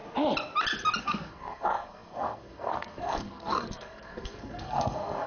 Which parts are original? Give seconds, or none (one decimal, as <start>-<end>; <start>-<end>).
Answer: 0.0-1.0

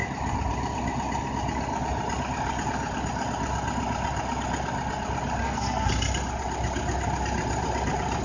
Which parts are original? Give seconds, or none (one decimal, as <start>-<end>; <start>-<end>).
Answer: 0.0-5.4; 5.9-8.2